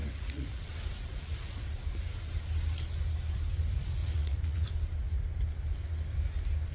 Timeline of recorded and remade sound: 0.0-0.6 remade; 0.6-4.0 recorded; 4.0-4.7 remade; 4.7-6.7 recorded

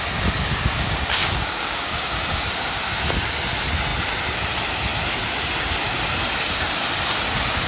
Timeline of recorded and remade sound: 0.0-0.5 recorded; 0.5-3.1 remade; 3.1-7.7 recorded

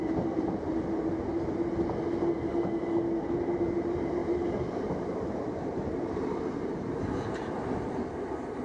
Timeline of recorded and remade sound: 0.0-0.7 remade; 0.7-4.2 recorded; 4.2-7.9 remade; 7.9-8.6 recorded

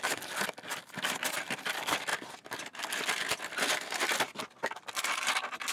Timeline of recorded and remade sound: 0.0-5.7 recorded

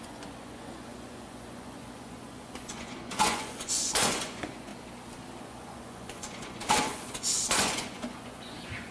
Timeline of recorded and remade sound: 0.0-4.7 remade; 4.7-5.4 recorded; 5.4-8.9 remade